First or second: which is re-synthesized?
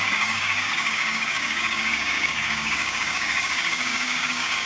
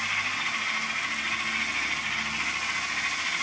first